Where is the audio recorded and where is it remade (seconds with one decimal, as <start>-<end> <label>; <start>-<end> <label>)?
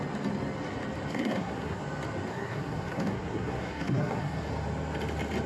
0.0-1.1 recorded; 1.1-1.8 remade; 1.8-2.3 recorded; 2.3-4.5 remade; 4.5-5.5 recorded